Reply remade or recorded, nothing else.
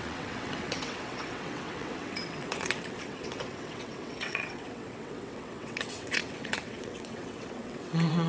remade